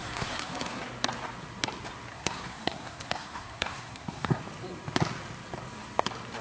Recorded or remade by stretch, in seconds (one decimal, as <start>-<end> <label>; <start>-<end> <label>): 0.0-0.8 remade; 0.8-2.1 recorded; 2.1-4.4 remade; 4.4-6.4 recorded